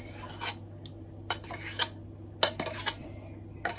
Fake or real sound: real